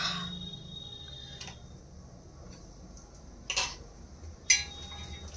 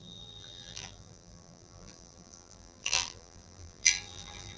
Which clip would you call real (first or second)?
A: first